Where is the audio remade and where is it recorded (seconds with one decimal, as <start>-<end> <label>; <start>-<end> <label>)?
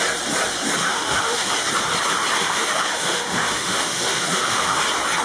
0.0-0.8 recorded; 0.8-1.5 remade; 1.5-2.4 recorded; 2.4-4.8 remade; 4.8-5.2 recorded